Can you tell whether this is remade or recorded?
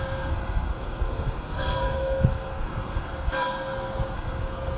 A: remade